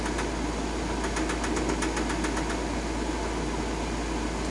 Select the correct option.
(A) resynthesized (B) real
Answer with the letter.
B